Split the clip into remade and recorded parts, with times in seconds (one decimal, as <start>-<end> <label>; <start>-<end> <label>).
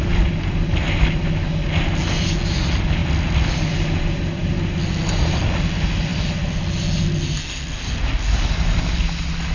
0.0-9.5 recorded